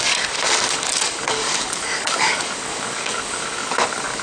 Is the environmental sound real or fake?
fake